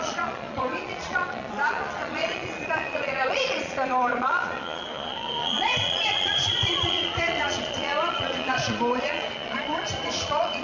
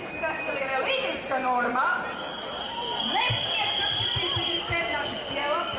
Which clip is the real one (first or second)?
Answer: second